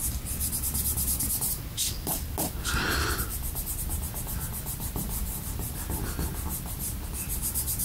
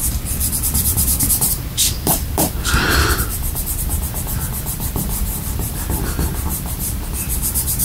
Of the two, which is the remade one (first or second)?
second